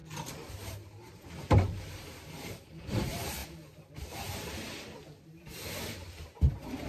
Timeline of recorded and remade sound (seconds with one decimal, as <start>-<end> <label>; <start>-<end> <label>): 0.0-3.4 remade; 3.4-6.5 recorded; 6.5-6.9 remade

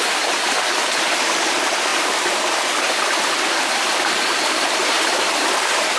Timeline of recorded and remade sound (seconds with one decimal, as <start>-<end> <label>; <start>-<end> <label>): 0.0-6.0 recorded